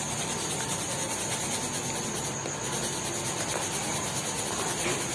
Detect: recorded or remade recorded